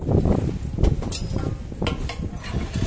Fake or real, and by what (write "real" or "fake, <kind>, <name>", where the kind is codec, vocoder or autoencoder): real